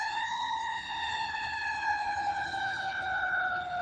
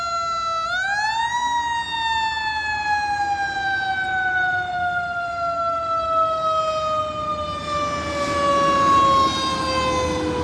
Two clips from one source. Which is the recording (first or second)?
second